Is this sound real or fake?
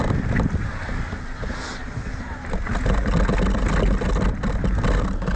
real